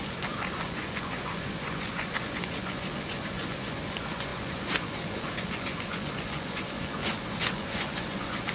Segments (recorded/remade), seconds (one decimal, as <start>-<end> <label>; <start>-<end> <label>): 0.0-8.5 remade